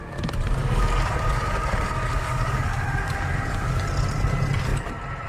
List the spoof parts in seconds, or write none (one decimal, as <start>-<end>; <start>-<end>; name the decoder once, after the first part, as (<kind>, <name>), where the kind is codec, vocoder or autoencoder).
0.6-3.8 (codec, DAC)